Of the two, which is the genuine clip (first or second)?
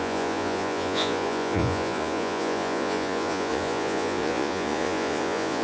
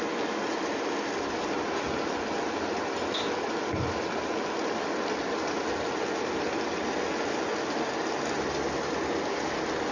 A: second